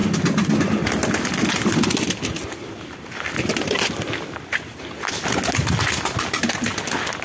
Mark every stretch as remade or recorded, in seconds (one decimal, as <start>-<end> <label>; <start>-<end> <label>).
0.0-7.2 recorded